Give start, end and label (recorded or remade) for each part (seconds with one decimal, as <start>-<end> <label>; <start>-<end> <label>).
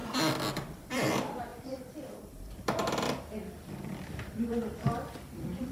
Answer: 0.0-0.5 recorded; 0.5-2.8 remade; 2.8-3.9 recorded; 3.9-5.7 remade